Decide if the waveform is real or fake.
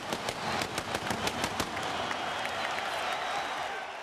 real